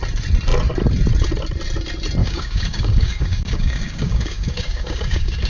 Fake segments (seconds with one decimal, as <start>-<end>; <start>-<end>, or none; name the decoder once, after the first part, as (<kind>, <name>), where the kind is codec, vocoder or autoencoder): 2.2-5.5 (codec, DAC)